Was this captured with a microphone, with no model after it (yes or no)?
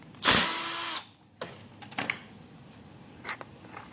yes